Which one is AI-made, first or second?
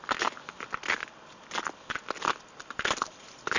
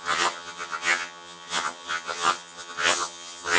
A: second